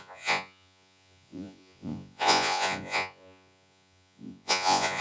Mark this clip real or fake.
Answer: fake